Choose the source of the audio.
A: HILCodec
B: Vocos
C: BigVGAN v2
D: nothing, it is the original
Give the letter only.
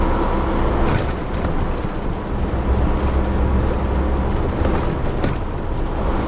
D